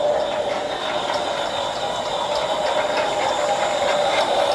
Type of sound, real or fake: real